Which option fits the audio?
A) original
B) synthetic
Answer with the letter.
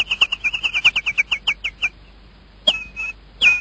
A